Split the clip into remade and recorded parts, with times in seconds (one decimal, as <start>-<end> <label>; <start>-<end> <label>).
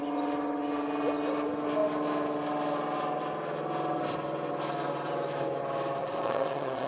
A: 0.0-6.0 recorded; 6.0-6.9 remade